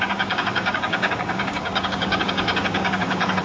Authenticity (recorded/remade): remade